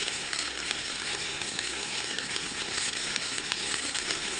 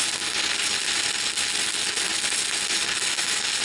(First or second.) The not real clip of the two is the first